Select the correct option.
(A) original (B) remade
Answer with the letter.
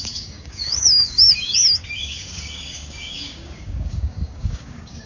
B